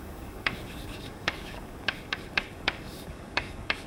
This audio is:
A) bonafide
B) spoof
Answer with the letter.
B